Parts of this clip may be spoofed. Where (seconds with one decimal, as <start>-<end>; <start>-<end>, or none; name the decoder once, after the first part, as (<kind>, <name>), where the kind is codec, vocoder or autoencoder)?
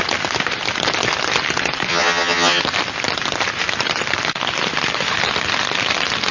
1.9-2.6 (vocoder, HiFi-GAN)